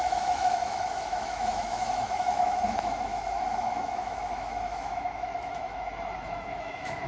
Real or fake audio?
fake